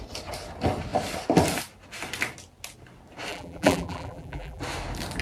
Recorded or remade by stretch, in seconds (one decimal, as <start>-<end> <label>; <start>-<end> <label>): 0.0-3.3 recorded; 3.3-4.6 remade; 4.6-5.2 recorded